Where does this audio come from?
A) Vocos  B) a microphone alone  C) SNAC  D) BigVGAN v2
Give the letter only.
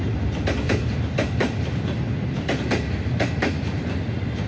B